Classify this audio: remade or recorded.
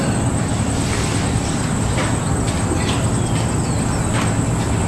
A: recorded